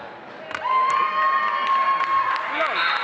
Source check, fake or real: real